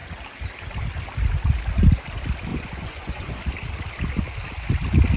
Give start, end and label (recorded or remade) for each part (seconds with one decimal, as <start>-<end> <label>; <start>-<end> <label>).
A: 0.0-2.5 recorded; 2.5-3.4 remade; 3.4-5.2 recorded